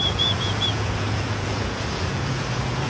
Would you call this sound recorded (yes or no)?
no